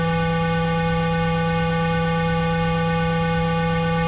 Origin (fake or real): fake